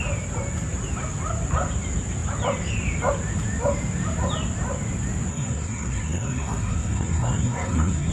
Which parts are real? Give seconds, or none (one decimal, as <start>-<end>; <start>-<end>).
0.0-5.3